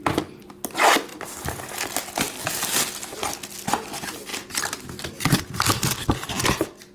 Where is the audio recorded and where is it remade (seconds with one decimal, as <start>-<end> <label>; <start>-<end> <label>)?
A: 0.0-6.9 recorded